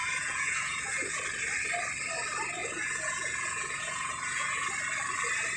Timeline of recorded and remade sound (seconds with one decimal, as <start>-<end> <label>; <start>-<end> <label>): 0.0-1.2 remade; 1.2-2.6 recorded; 2.6-4.7 remade; 4.7-5.6 recorded